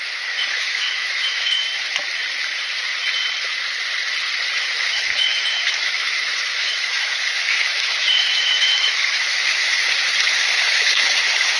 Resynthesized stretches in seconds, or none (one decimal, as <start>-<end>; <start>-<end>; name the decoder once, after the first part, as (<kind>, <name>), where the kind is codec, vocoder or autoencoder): 0.0-1.6 (autoencoder, DAC-VAE); 4.8-11.6